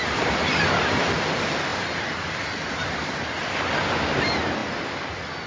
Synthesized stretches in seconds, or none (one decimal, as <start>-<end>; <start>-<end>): 0.0-4.6